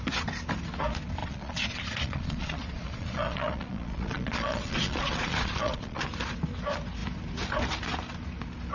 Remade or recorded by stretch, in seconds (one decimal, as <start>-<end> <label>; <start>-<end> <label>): 0.0-1.2 recorded; 1.2-6.0 remade; 6.0-8.7 recorded